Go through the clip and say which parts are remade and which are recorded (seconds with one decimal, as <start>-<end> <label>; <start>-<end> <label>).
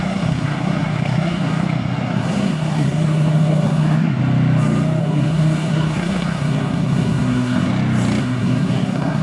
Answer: 0.0-4.2 remade; 4.2-5.0 recorded; 5.0-7.7 remade; 7.7-8.2 recorded; 8.2-9.2 remade